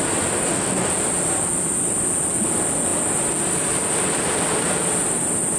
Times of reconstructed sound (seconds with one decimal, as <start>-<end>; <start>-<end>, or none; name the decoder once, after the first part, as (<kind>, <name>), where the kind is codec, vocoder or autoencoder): 0.4-0.9 (codec, DAC)